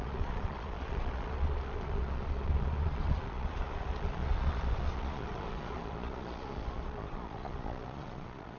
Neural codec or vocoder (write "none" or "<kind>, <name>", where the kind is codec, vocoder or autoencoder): vocoder, Vocos